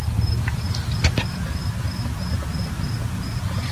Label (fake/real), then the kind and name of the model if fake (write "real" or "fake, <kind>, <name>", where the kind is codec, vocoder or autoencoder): real